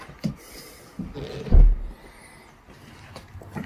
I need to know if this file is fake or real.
real